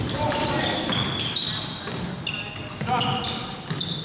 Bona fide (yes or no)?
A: yes